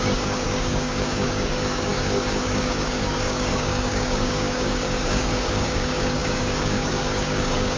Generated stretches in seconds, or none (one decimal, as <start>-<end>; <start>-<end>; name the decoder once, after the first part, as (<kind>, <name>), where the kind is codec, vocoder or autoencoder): 0.0-7.8 (codec, DAC)